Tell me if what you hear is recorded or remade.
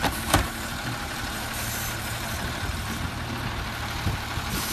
remade